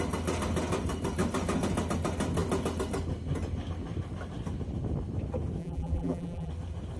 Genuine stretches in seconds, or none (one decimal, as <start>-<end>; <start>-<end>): 0.0-5.6; 6.5-7.0